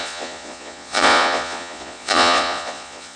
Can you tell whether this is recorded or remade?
remade